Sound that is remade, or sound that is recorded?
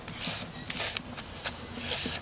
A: recorded